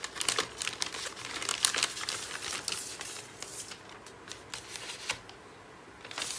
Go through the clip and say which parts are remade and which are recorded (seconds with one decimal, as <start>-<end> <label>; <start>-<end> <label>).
0.0-6.4 recorded

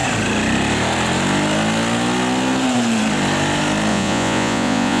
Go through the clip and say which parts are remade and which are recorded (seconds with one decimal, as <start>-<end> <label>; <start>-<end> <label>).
0.0-3.9 recorded; 3.9-5.0 remade

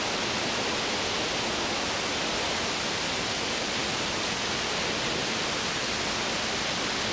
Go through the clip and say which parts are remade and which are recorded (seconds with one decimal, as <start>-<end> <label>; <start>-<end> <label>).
0.0-7.1 recorded